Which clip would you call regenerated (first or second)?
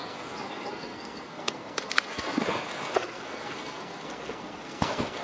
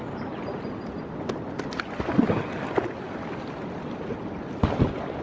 first